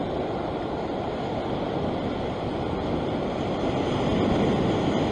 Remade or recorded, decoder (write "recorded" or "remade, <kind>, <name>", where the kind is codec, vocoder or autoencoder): recorded